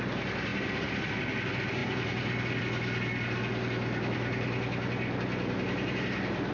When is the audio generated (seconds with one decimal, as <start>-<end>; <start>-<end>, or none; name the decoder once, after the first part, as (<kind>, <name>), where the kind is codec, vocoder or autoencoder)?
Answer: 1.8-2.6 (vocoder, BigVGAN v2)